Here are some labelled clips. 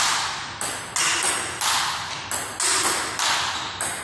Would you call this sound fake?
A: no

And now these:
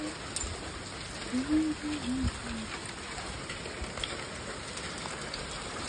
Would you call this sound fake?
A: no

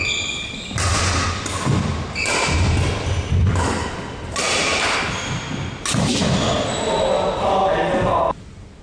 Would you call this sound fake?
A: no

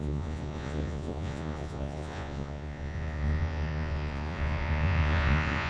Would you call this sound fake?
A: yes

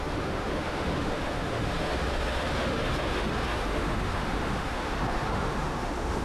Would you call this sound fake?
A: yes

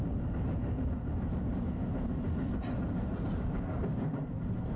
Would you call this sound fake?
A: no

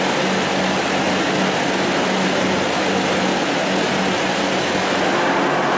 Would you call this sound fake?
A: no